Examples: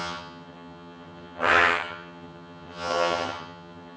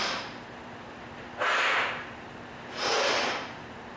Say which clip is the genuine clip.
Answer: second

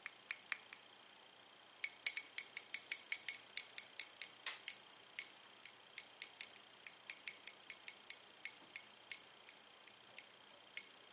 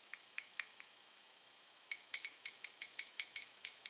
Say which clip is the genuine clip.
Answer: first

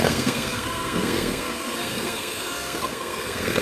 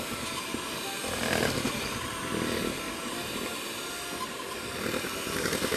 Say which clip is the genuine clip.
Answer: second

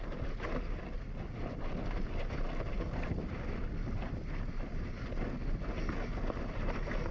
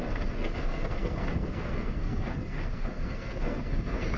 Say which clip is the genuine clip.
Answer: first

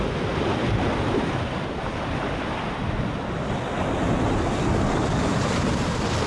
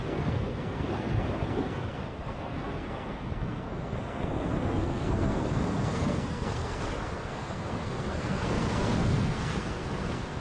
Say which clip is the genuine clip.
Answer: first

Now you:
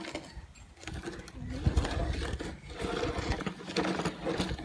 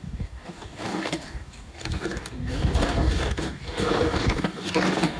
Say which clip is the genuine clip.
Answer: first